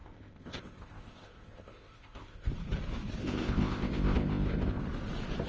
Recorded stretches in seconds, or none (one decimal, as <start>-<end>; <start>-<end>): 2.5-3.2; 4.8-5.5